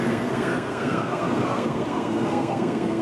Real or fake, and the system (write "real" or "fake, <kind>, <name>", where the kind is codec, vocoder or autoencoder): fake, codec, SNAC